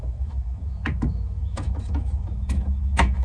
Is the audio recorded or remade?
remade